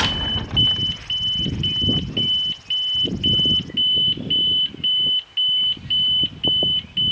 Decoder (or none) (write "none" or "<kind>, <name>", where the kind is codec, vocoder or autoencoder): none